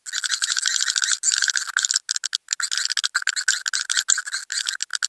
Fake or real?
real